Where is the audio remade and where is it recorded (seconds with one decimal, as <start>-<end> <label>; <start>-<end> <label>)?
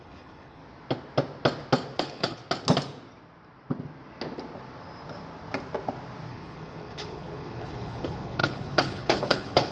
0.0-0.6 remade; 0.6-2.0 recorded; 2.0-2.4 remade; 2.4-6.3 recorded; 6.3-9.7 remade